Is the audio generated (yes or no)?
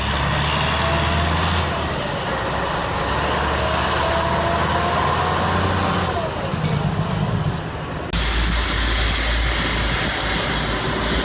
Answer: no